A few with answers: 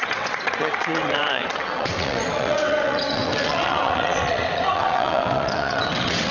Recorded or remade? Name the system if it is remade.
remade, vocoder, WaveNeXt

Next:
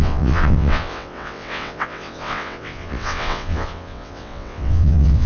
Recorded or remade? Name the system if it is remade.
remade, vocoder, WaveNeXt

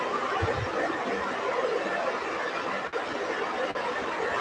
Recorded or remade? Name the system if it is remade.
recorded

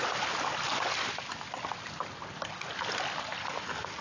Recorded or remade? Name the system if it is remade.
recorded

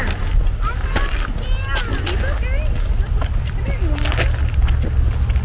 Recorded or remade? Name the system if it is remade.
recorded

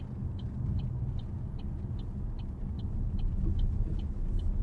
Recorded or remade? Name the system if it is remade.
recorded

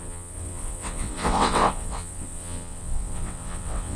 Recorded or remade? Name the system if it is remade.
remade, vocoder, WaveNeXt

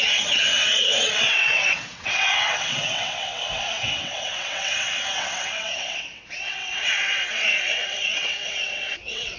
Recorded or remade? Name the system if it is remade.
remade, vocoder, WaveNeXt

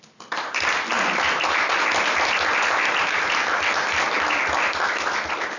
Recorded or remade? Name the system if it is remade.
recorded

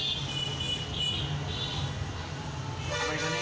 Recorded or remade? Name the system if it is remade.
recorded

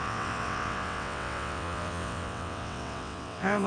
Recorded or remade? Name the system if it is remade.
remade, vocoder, WaveNeXt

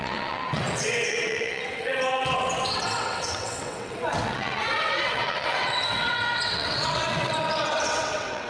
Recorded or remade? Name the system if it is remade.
remade, vocoder, WaveNeXt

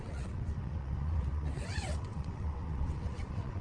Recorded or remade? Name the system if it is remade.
remade, vocoder, WaveNeXt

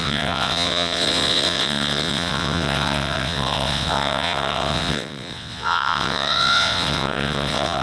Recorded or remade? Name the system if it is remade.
remade, vocoder, WaveNeXt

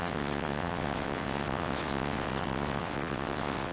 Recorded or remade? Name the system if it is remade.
remade, vocoder, WaveNeXt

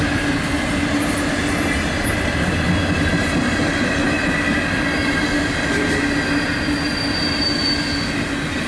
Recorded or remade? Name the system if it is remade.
recorded